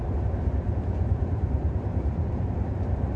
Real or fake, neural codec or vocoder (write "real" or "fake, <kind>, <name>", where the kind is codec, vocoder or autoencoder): fake, vocoder, BigVGAN v2